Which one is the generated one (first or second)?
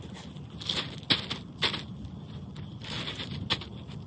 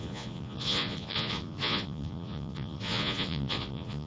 second